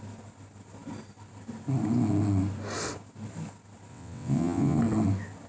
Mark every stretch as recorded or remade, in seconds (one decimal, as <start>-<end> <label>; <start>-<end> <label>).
0.0-3.9 recorded; 3.9-4.8 remade; 4.8-5.5 recorded